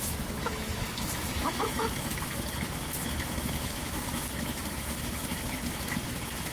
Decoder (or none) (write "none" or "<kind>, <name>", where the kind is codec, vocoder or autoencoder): autoencoder, DAC-VAE